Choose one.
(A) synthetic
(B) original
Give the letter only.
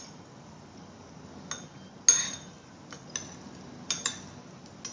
B